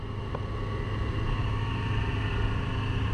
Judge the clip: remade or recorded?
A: recorded